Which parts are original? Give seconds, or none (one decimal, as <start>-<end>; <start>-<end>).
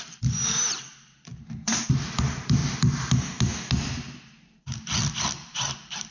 2.6-5.1